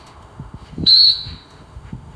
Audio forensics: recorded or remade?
remade